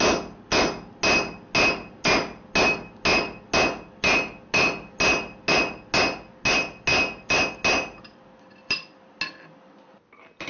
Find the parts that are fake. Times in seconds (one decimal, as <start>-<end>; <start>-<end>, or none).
none